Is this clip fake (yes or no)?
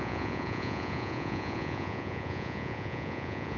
yes